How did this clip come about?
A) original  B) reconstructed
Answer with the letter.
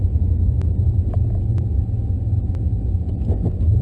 A